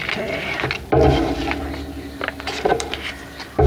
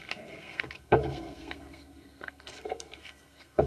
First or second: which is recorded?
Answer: first